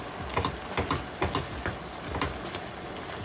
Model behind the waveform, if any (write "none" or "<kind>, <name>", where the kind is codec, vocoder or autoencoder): none